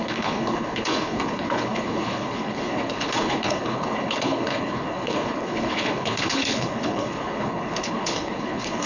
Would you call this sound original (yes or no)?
no